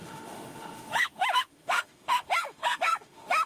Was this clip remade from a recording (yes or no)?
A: yes